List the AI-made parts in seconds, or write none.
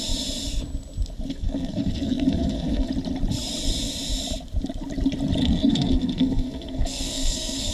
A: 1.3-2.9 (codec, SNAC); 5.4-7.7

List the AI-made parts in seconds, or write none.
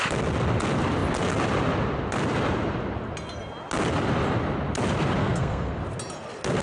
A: 5.2-5.8 (codec, SNAC)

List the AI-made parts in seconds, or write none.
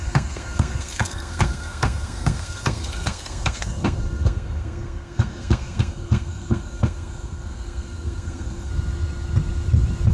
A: 0.0-8.7 (codec, SNAC)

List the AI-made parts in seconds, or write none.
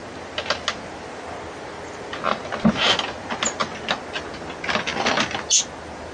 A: none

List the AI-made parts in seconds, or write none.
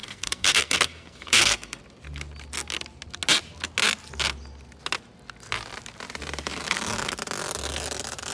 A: 0.0-1.8 (codec, SNAC)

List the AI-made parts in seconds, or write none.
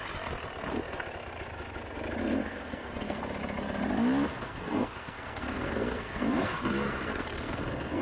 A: 2.2-3.2 (codec, SNAC); 4.3-8.0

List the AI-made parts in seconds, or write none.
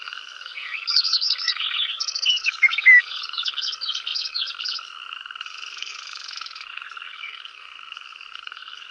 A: 0.0-8.9 (codec, SNAC)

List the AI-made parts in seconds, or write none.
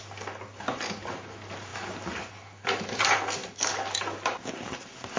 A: none